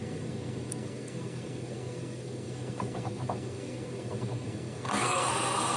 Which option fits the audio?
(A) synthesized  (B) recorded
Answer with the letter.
A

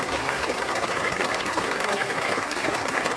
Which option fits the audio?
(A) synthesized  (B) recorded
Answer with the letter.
A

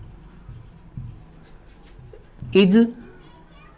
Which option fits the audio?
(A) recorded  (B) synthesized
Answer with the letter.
A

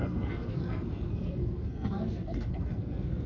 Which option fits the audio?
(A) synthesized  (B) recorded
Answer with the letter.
A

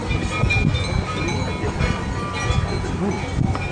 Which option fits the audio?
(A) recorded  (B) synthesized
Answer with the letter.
A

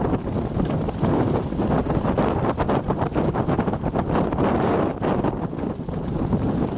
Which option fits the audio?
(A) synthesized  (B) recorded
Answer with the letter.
B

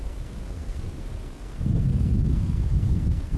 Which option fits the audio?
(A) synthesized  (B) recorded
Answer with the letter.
A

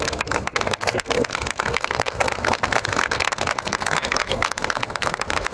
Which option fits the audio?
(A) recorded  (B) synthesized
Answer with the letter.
B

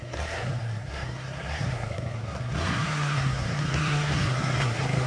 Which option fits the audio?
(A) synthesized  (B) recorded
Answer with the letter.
A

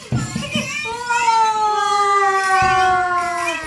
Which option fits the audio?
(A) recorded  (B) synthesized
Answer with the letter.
A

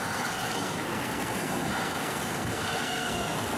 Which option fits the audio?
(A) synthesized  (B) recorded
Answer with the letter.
A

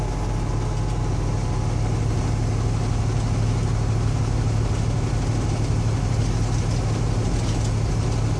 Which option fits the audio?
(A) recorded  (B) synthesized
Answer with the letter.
A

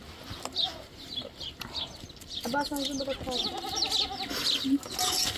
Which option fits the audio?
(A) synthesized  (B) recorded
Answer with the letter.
B